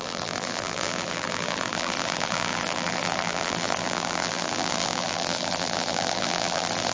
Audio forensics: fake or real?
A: fake